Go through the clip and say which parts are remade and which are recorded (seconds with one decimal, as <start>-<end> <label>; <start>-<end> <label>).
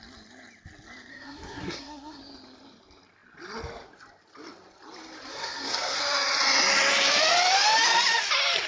0.0-1.1 recorded; 1.1-2.2 remade; 2.2-5.3 recorded; 5.3-6.0 remade; 6.0-8.7 recorded